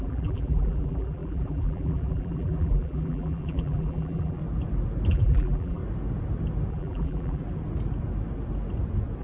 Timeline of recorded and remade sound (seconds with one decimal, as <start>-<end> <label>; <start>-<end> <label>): 0.0-4.4 remade; 4.4-5.1 recorded; 5.1-5.8 remade; 5.8-6.7 recorded; 6.7-7.4 remade; 7.4-9.2 recorded